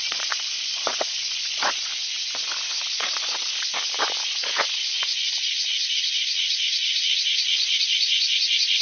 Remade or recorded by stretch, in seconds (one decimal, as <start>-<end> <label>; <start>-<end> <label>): 0.0-1.9 remade; 1.9-2.8 recorded; 2.8-3.7 remade; 3.7-4.2 recorded; 4.2-8.8 remade